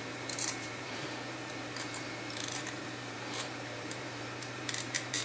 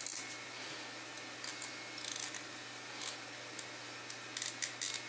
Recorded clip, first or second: second